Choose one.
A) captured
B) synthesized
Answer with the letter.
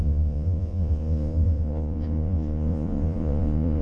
B